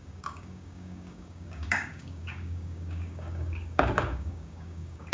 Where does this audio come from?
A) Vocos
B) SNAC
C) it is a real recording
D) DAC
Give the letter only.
D